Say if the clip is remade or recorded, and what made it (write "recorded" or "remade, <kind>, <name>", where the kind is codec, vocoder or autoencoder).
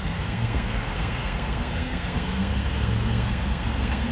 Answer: remade, codec, SNAC